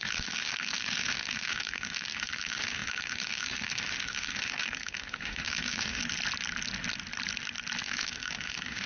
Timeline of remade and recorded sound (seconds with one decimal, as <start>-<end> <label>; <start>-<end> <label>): 0.0-6.0 remade; 6.0-7.8 recorded; 7.8-8.9 remade